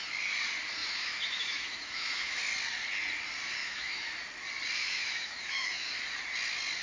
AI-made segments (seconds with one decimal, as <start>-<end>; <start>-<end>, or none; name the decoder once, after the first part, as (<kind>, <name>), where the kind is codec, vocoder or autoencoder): 0.8-2.4 (autoencoder, DAC-VAE); 3.6-4.1; 4.8-5.9